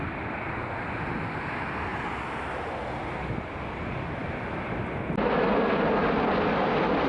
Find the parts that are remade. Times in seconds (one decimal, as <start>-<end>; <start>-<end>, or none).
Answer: none